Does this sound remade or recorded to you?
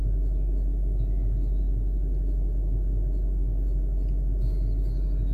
recorded